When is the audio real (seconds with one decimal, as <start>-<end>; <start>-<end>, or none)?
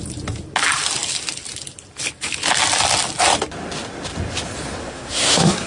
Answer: 0.0-4.8